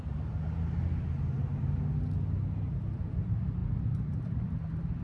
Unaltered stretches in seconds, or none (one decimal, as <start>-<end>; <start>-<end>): 0.0-5.0